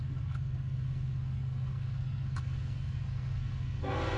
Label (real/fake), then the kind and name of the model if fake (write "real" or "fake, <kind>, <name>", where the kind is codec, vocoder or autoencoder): fake, codec, SNAC